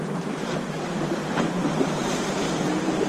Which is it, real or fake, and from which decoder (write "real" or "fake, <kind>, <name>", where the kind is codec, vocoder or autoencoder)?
fake, vocoder, BigVGAN v2